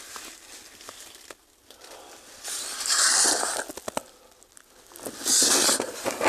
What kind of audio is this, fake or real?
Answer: real